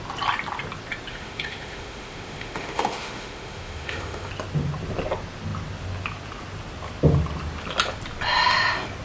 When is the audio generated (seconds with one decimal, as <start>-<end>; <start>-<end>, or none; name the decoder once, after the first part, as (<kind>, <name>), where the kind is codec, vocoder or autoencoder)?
1.1-4.3 (autoencoder, DAC-VAE)